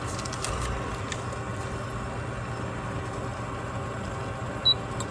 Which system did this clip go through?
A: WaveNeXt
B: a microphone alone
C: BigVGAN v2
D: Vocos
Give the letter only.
B